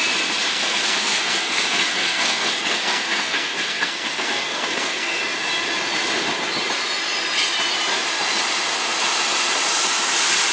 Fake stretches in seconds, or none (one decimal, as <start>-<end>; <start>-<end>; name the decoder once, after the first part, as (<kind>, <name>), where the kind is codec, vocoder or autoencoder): 0.5-5.2 (codec, SNAC)